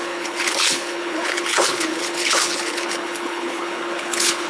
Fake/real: fake